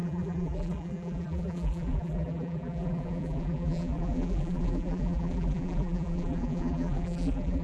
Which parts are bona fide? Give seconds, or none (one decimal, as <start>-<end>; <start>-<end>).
none